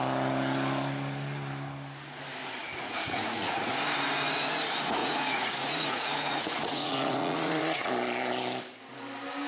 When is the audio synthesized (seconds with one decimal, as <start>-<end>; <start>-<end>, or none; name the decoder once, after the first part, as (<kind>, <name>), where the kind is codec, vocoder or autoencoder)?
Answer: 2.6-3.7 (vocoder, Vocos); 5.0-7.9

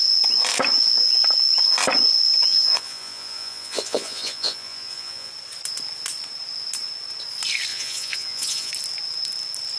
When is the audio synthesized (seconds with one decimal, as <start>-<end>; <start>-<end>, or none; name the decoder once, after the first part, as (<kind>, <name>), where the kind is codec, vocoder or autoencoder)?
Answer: 2.5-5.3 (vocoder, Vocos); 7.7-8.7

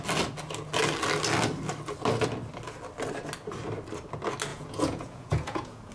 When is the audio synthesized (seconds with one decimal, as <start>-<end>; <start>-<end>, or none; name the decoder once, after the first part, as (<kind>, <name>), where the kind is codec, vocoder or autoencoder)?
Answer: 4.5-5.9 (vocoder, Vocos)

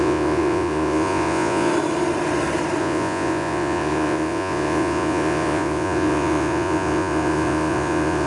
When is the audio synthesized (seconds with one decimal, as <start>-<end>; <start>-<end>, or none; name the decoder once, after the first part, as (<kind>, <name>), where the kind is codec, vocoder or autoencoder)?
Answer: 0.0-1.7 (vocoder, Vocos); 2.8-8.3

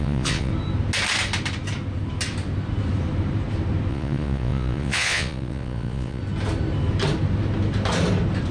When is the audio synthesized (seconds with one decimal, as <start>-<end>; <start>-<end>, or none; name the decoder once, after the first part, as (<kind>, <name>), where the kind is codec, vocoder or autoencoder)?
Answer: 0.0-0.5 (vocoder, Vocos); 3.9-6.2